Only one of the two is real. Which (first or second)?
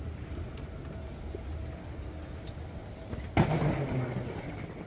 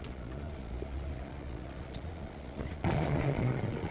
first